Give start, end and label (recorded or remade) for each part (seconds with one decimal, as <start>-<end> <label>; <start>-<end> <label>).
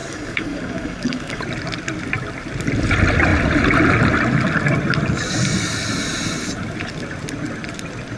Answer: 0.0-1.4 remade; 1.4-8.2 recorded